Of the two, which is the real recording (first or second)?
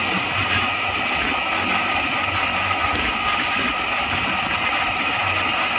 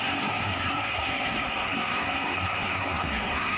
first